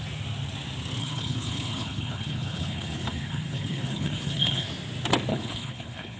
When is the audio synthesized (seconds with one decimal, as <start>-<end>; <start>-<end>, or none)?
1.0-4.7; 5.3-6.2